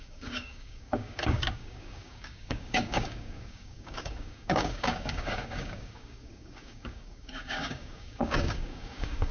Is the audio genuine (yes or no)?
no